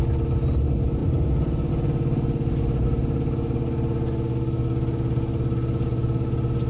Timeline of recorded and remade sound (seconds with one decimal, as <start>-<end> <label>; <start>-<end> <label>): 0.0-6.7 recorded